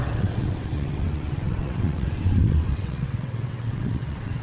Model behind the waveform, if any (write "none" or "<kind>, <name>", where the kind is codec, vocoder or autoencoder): vocoder, WaveNeXt